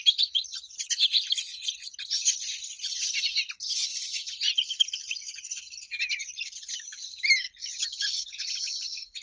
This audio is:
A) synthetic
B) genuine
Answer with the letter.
B